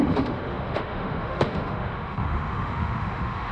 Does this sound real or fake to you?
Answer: fake